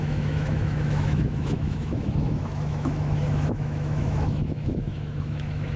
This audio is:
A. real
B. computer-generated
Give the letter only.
B